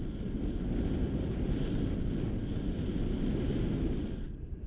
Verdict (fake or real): real